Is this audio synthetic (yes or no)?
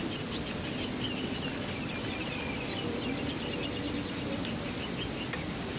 no